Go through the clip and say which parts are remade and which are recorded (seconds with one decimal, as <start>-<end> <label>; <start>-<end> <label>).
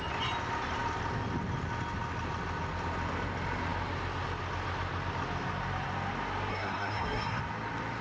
0.0-6.5 recorded; 6.5-7.4 remade; 7.4-8.0 recorded